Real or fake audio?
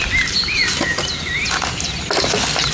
real